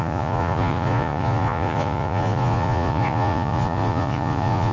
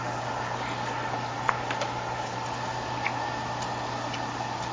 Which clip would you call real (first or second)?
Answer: second